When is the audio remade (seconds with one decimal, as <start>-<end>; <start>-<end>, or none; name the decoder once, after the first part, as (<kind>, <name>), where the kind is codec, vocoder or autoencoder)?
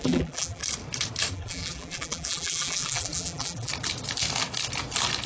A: 0.0-0.6 (vocoder, BigVGAN v2); 1.3-3.7